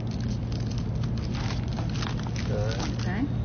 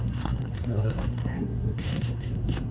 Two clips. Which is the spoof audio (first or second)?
second